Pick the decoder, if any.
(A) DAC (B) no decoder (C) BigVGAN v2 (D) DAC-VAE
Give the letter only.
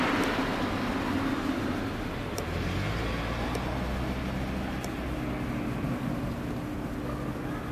B